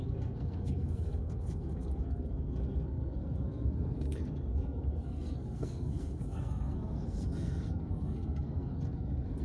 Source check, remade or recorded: remade